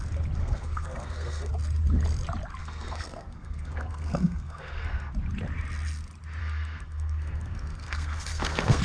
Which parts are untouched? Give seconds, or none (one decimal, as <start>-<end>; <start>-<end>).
0.0-0.4; 1.5-2.6; 5.1-6.4